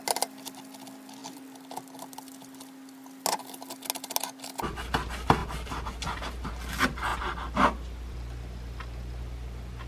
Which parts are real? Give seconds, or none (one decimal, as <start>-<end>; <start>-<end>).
0.0-9.9